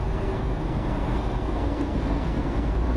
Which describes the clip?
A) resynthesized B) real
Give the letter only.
A